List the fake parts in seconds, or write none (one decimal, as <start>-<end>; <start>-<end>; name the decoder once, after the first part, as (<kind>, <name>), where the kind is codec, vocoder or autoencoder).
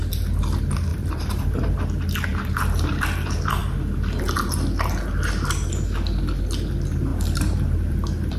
0.9-1.8 (vocoder, BigVGAN v2); 2.3-2.9; 7.1-8.4